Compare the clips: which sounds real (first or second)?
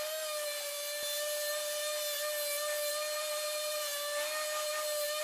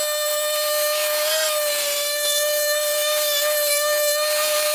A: first